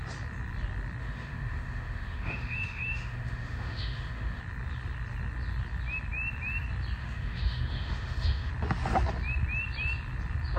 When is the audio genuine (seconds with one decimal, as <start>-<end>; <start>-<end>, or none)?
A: 0.0-1.0; 4.4-7.0; 8.5-10.6

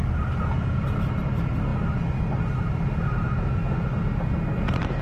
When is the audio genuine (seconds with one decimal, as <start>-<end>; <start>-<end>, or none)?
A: 0.0-5.0

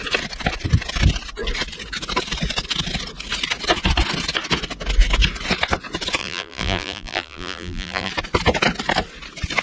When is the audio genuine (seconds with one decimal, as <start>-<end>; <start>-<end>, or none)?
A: 0.0-6.2; 8.1-9.6

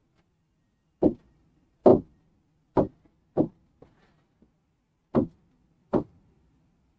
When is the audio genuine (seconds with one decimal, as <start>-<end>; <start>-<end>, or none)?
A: 0.0-1.2; 1.9-5.8

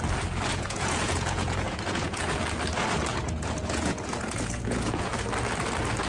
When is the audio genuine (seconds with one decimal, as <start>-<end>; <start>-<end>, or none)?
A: 0.0-0.5; 2.4-3.1; 5.1-6.1